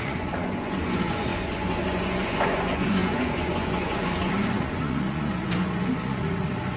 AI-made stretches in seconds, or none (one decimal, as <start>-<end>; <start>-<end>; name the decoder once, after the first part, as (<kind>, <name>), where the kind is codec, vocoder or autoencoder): 0.0-6.8 (vocoder, Vocos)